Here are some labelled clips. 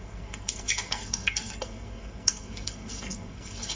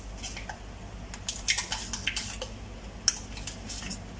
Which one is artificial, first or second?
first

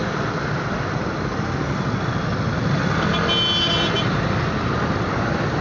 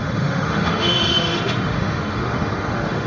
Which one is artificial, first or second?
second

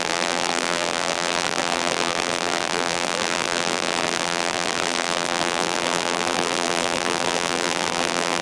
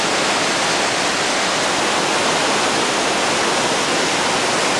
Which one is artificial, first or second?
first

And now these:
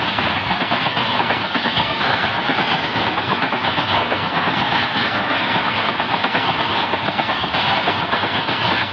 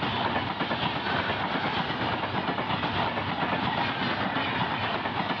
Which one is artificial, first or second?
first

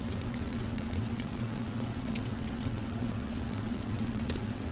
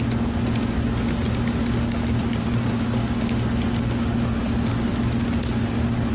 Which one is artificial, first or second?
first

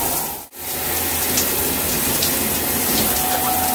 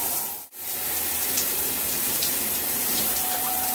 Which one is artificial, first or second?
second